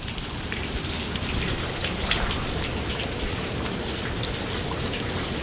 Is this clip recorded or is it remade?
recorded